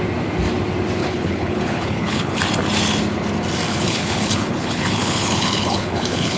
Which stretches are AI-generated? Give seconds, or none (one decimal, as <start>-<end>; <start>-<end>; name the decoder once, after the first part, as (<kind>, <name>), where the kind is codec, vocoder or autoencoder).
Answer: 1.0-2.4 (codec, HILCodec); 3.7-6.4